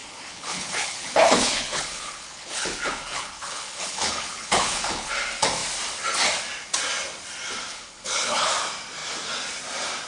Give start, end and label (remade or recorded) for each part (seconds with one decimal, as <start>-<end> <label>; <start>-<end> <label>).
0.0-5.1 remade; 5.1-7.7 recorded; 7.7-8.5 remade; 8.5-10.1 recorded